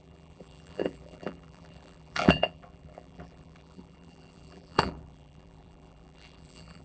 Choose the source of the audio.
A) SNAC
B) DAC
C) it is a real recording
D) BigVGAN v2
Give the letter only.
D